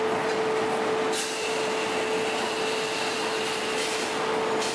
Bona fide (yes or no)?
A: yes